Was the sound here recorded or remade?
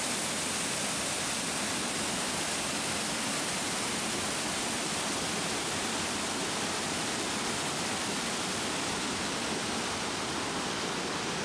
recorded